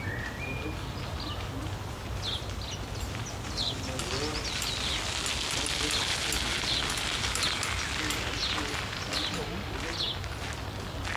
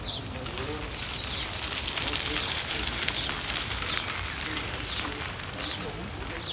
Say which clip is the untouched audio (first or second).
first